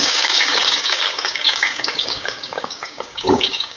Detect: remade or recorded remade